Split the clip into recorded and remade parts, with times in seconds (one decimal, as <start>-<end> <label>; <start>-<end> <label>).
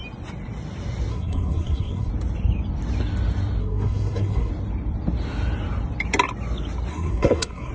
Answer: 0.0-1.1 recorded; 1.1-2.1 remade; 2.1-3.6 recorded; 3.6-4.5 remade; 4.5-6.9 recorded; 6.9-7.7 remade